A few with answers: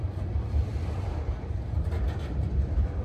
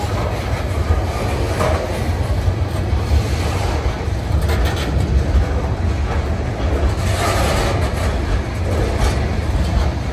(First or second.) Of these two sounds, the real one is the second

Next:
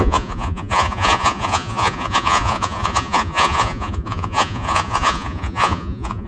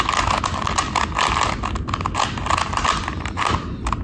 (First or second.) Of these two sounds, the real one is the second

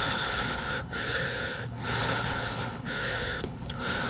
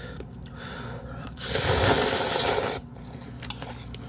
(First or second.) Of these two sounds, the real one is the second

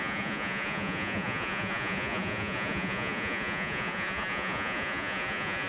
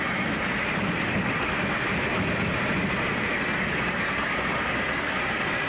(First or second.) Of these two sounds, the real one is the second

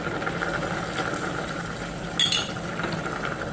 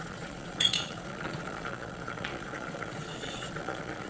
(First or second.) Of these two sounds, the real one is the first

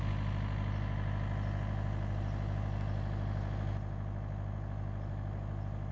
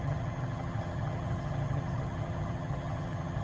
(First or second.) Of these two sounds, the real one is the first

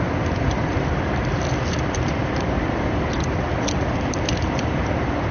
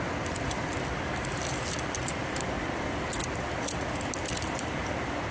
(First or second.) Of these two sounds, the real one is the second